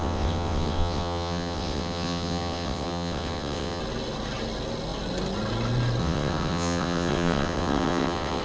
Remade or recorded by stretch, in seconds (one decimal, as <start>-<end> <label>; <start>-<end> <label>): 0.0-3.8 remade; 3.8-6.0 recorded; 6.0-8.4 remade